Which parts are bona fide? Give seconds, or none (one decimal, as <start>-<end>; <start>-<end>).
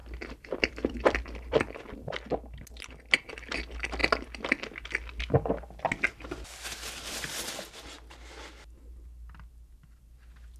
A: 1.6-10.6